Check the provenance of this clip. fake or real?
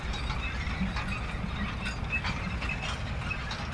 real